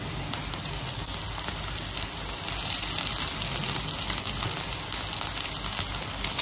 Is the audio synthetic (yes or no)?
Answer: no